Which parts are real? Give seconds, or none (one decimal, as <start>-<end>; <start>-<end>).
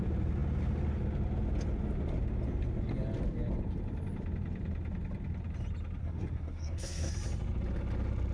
0.0-6.0; 7.1-8.3